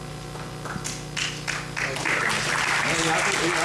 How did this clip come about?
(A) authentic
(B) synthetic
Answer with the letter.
A